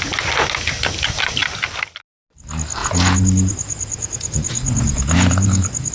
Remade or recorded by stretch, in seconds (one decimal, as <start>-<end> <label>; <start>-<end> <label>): 0.0-2.8 recorded; 2.8-5.9 remade

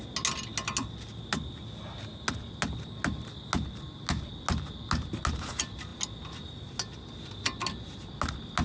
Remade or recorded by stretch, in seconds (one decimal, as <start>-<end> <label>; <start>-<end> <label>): 0.0-8.6 recorded

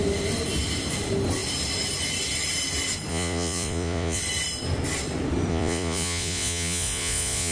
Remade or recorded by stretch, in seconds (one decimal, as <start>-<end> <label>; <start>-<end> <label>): 0.0-3.1 recorded; 3.1-4.2 remade; 4.2-5.5 recorded; 5.5-7.5 remade

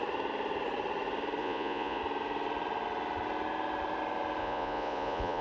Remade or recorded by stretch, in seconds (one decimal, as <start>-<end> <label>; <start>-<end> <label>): 0.0-1.4 recorded; 1.4-2.0 remade; 2.0-4.4 recorded; 4.4-5.4 remade

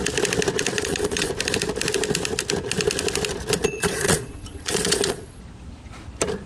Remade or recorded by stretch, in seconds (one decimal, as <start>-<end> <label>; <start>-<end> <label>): 0.0-0.7 recorded; 0.7-1.3 remade; 1.3-3.6 recorded; 3.6-5.4 remade; 5.4-6.5 recorded